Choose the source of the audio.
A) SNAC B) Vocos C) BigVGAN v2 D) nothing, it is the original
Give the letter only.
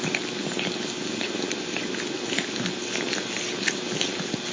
D